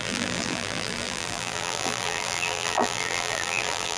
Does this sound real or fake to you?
fake